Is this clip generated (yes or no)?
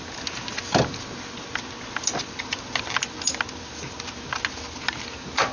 no